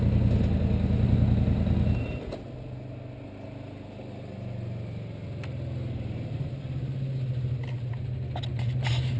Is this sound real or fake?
real